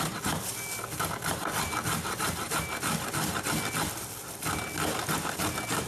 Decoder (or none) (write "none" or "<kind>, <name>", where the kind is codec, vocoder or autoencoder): none